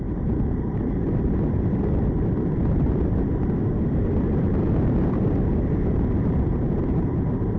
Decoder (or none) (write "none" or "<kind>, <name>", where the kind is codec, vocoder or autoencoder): vocoder, BigVGAN v2